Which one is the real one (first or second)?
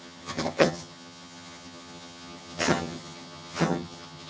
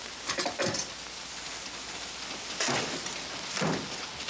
second